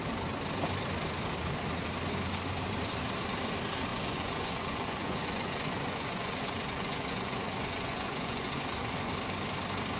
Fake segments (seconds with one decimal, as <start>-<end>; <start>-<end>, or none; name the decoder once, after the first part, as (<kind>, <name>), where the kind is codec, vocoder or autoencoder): 3.9-9.1 (vocoder, Vocos)